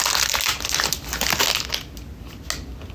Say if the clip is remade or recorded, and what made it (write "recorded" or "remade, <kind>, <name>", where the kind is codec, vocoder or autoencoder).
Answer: recorded